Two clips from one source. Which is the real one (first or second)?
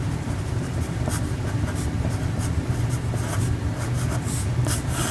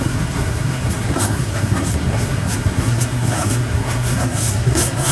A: first